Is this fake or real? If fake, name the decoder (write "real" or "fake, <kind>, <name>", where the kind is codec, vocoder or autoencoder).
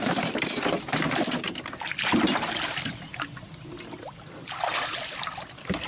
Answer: fake, vocoder, BigVGAN v2